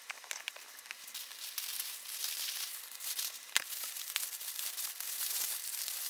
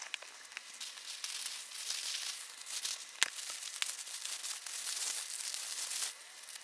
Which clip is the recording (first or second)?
second